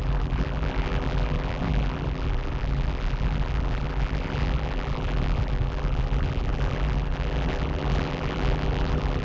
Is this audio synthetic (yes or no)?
yes